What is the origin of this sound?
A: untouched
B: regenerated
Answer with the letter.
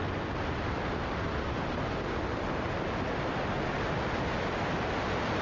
A